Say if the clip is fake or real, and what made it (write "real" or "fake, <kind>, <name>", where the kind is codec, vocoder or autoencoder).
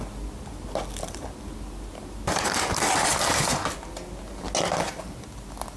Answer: real